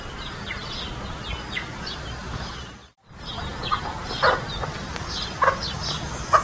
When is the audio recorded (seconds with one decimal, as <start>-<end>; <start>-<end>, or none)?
0.0-1.7; 5.4-6.4